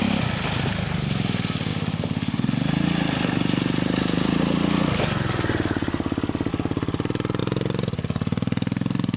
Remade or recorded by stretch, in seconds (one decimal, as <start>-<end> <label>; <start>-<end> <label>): 0.0-9.2 recorded